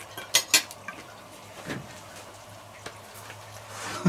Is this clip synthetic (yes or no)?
no